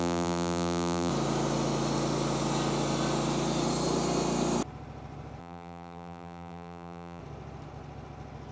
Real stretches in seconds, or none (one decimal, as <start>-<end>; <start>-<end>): 1.1-5.4; 7.2-8.5